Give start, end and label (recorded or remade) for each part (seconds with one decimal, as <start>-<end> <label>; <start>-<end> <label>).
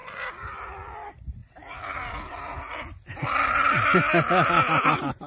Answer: 0.0-0.5 remade; 0.5-1.4 recorded; 1.4-3.1 remade; 3.1-5.3 recorded